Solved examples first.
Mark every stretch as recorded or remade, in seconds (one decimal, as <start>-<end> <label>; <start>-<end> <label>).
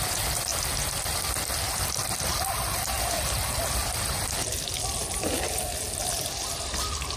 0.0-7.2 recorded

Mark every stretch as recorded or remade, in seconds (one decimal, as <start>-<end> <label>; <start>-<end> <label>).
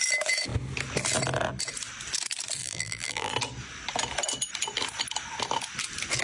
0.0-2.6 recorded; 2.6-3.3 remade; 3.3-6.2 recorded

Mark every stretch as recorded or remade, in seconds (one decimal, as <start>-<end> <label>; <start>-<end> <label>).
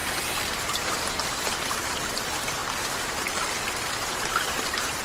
0.0-1.5 remade; 1.5-2.6 recorded; 2.6-5.0 remade